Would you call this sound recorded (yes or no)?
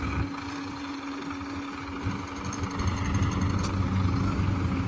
yes